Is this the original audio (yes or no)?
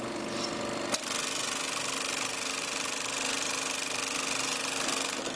yes